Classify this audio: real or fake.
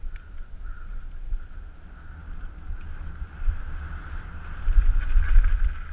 real